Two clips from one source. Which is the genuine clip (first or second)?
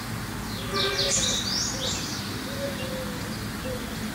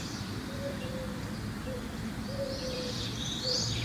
first